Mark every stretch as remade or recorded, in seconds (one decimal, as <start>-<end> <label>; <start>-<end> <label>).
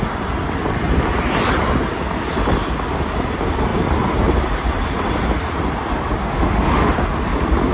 0.0-6.2 recorded; 6.2-6.9 remade; 6.9-7.7 recorded